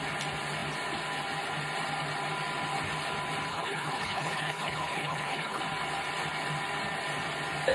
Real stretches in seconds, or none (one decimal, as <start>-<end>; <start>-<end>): 0.0-3.5; 5.6-7.7